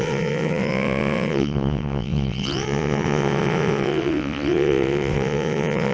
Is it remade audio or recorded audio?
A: remade